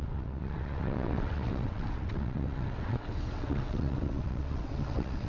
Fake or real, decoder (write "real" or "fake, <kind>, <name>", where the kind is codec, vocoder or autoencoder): fake, vocoder, WaveNeXt